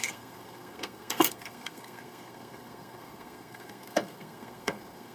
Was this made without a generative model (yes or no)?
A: no